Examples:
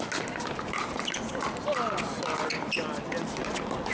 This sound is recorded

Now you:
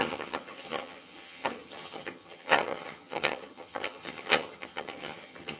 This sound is remade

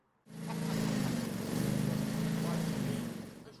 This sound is recorded